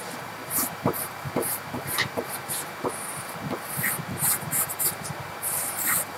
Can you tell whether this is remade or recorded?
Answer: remade